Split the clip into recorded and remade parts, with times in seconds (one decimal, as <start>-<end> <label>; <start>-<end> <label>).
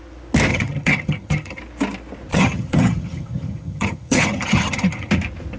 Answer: 0.0-0.5 recorded; 0.5-1.6 remade; 1.6-2.3 recorded; 2.3-5.1 remade; 5.1-5.6 recorded